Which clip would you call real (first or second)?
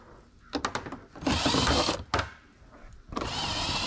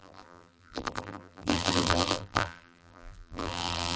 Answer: first